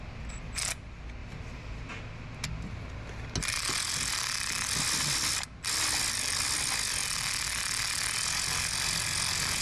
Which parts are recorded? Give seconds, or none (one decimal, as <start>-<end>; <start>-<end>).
0.0-1.2; 2.0-9.6